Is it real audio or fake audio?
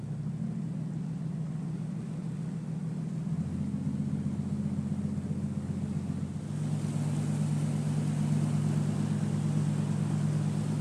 real